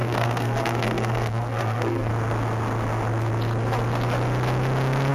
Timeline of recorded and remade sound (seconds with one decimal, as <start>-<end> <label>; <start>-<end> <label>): 0.0-2.1 remade; 2.1-5.1 recorded